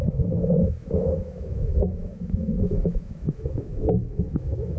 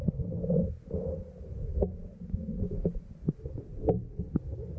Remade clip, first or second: first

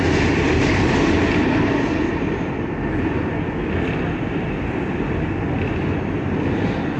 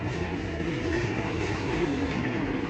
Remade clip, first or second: second